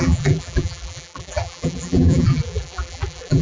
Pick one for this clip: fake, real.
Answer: fake